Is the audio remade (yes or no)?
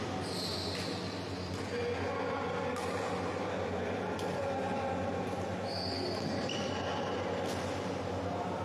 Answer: no